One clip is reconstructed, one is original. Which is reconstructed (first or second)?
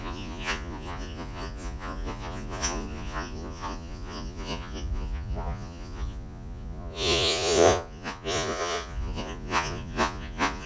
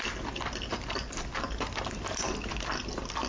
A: first